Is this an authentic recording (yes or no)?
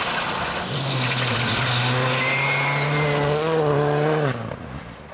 yes